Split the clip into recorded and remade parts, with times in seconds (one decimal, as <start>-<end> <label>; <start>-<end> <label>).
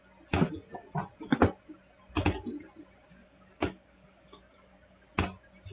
0.0-3.1 recorded; 3.1-5.1 remade; 5.1-5.7 recorded